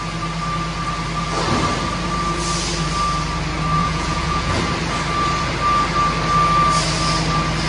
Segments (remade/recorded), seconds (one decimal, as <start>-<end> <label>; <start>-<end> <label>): 0.0-3.8 recorded; 3.8-4.6 remade; 4.6-7.7 recorded